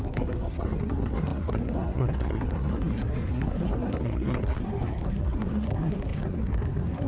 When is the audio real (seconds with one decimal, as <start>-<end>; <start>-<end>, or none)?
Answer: none